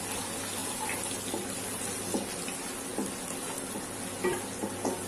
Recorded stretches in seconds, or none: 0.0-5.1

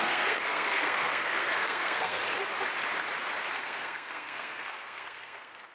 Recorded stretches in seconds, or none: 2.2-3.5

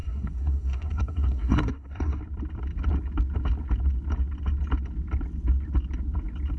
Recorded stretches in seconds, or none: 2.2-6.6

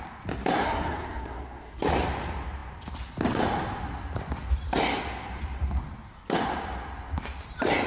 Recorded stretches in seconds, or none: 0.0-0.6; 1.8-7.9

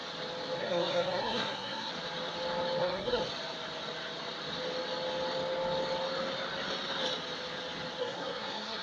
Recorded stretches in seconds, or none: 0.0-0.6; 1.9-2.8; 3.2-8.0

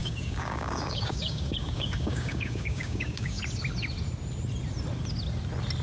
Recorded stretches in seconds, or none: 3.4-5.8

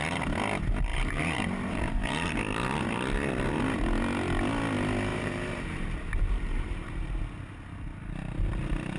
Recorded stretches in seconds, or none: 0.0-0.9; 2.4-5.1; 7.2-9.0